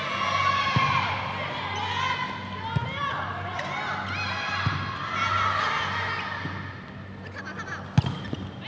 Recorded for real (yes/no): yes